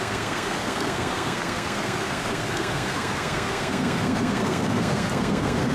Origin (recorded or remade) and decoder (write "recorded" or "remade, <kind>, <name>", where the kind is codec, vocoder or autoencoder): remade, codec, SNAC